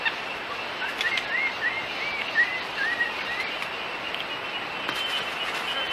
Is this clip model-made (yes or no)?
no